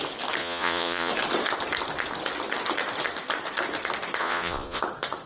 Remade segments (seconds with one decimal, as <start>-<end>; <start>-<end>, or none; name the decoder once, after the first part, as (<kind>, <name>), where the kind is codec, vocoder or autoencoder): 0.4-1.1 (vocoder, Vocos); 4.2-4.8